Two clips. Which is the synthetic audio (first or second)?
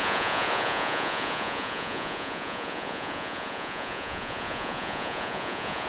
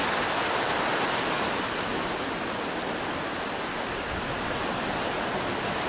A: first